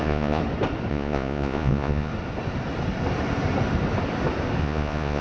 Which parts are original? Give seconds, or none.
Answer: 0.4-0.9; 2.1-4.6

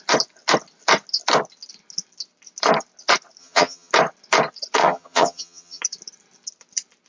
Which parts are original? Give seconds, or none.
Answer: 0.0-3.4; 3.9-4.8; 5.8-7.1

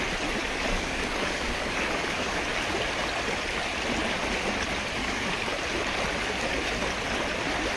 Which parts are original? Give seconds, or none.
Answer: 0.0-0.4; 2.4-5.0; 5.5-7.8

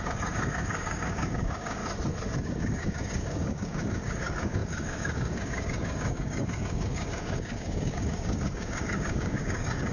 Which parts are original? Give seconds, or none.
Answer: 1.8-2.4